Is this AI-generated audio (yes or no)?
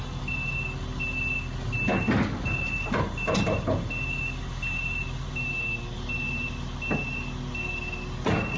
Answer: no